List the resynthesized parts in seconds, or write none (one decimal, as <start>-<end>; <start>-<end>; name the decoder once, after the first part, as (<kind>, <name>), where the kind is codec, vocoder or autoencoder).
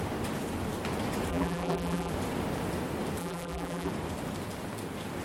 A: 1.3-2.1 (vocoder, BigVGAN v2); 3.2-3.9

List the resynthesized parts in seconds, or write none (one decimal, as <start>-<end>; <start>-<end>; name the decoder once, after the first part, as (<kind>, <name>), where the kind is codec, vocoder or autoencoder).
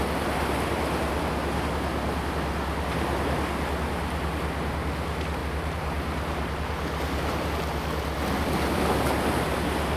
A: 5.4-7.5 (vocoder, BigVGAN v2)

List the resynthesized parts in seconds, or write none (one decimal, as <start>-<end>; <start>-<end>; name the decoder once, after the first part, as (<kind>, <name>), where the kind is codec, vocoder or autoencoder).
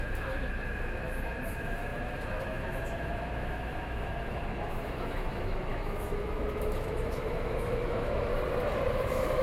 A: 0.0-8.3 (autoencoder, DAC-VAE); 8.9-9.4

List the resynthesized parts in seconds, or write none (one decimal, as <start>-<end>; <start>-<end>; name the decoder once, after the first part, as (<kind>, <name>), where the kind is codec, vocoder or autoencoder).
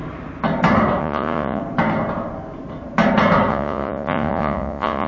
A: 1.0-1.6 (vocoder, Vocos); 3.5-5.1